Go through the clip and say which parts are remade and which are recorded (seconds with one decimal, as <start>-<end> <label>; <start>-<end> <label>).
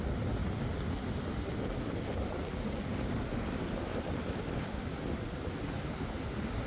0.0-6.7 recorded